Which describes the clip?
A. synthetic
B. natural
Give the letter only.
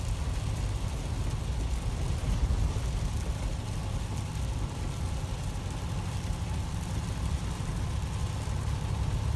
B